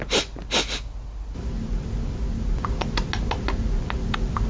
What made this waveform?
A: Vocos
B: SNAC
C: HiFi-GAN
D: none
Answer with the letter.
D